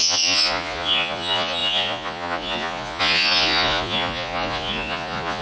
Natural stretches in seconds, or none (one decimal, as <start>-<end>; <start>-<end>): none